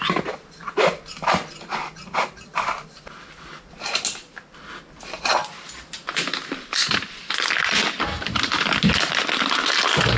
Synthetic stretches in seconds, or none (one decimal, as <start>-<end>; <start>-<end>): none